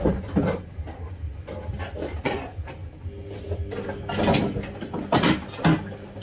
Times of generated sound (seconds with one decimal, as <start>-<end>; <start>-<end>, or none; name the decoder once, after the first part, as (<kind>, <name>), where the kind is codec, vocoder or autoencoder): 0.0-2.8 (vocoder, BigVGAN v2)